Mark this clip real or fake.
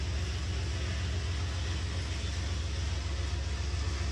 real